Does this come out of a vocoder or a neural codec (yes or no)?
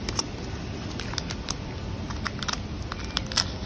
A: no